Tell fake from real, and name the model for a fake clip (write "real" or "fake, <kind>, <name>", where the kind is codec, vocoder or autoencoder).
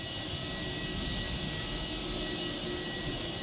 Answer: real